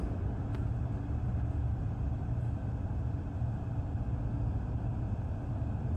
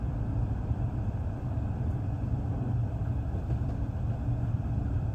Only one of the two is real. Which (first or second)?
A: first